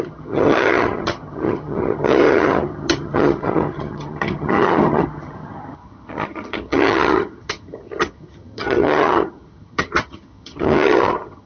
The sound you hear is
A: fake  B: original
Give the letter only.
A